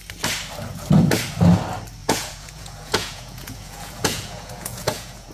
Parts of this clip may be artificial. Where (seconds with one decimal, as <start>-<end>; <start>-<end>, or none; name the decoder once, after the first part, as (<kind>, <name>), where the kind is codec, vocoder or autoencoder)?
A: 2.0-5.3 (vocoder, Vocos)